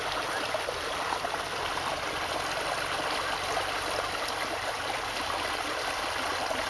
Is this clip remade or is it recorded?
recorded